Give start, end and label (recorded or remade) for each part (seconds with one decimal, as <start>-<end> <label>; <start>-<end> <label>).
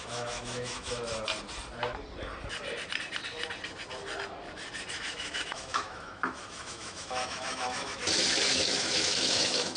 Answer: 0.0-1.0 remade; 1.0-4.9 recorded; 4.9-8.0 remade; 8.0-8.5 recorded; 8.5-9.8 remade